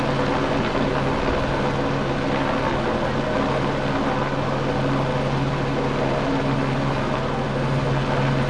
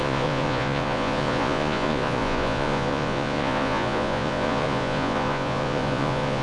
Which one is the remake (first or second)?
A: second